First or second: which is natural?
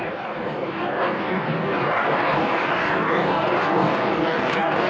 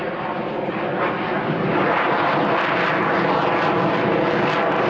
second